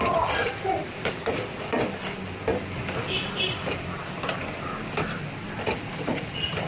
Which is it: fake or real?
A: real